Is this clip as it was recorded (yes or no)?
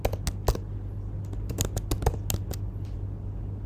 yes